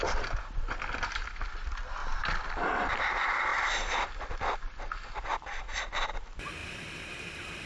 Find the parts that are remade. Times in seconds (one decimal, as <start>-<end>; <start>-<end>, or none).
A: 2.0-2.9; 3.5-4.3; 5.3-6.0; 6.6-7.7